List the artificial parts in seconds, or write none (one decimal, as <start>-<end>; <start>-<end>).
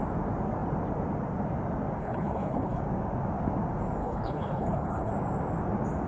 2.0-2.8; 4.0-5.1